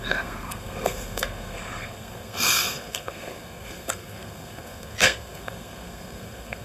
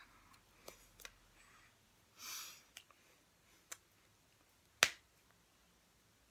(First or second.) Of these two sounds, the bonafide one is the second